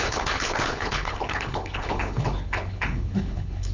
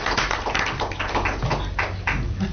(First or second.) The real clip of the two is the second